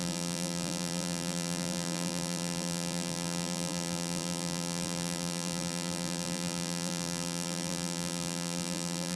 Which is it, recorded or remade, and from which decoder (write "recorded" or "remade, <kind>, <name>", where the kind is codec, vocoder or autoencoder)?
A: remade, vocoder, BigVGAN v2